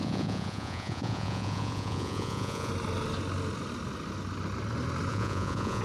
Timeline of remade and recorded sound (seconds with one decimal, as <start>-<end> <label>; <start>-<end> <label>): 0.0-2.7 remade; 2.7-5.1 recorded; 5.1-5.8 remade